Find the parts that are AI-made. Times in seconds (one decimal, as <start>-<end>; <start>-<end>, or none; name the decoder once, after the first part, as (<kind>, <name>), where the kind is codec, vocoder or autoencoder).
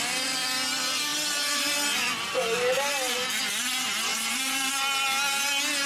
4.1-4.7 (vocoder, BigVGAN v2)